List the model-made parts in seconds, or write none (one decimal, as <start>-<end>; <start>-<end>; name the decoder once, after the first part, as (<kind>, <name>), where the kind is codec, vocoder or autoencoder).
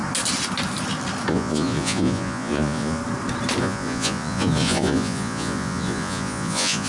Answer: 1.3-3.0 (vocoder, Vocos); 3.6-6.9